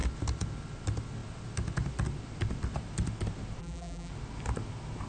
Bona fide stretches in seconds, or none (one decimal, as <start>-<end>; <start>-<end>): 0.0-3.6; 4.1-5.1